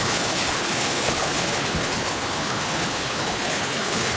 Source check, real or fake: fake